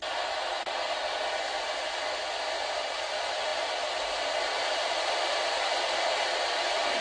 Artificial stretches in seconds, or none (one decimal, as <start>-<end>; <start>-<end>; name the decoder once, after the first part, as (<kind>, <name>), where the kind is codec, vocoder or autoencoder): none